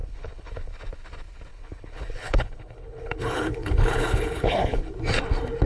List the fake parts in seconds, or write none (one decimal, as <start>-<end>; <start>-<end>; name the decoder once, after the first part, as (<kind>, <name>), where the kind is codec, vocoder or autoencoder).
0.0-0.7 (codec, HILCodec); 1.5-4.9